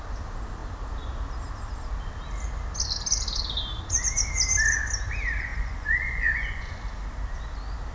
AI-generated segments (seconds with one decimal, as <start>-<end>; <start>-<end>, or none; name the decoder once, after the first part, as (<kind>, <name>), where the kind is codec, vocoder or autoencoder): 5.5-6.7 (vocoder, Vocos)

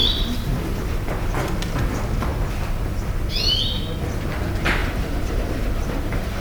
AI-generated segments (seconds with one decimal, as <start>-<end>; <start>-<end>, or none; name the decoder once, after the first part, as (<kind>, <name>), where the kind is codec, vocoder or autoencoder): 0.0-1.2 (vocoder, BigVGAN v2); 4.8-6.4

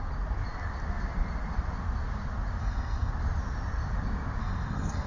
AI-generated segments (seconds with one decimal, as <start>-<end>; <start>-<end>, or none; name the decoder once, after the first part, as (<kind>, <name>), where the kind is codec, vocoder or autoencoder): 2.6-3.1 (codec, SNAC); 4.4-5.1

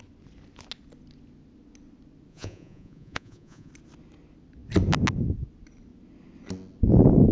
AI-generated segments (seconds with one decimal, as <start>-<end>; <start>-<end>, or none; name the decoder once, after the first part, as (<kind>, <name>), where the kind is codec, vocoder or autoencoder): 2.3-3.7 (vocoder, Vocos)

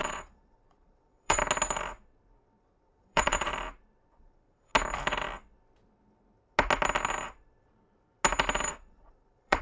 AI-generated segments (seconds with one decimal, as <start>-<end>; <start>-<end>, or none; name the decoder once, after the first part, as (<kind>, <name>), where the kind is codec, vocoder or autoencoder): 0.0-1.4 (vocoder, Vocos); 2.6-3.5; 4.1-4.7; 8.7-9.6